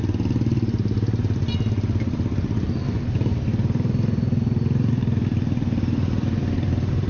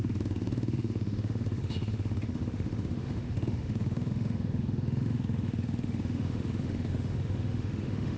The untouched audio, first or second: first